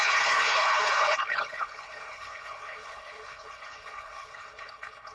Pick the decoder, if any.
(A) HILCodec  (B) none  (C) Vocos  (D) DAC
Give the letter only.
A